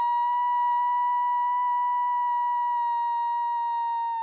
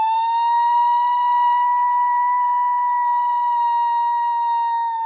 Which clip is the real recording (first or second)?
first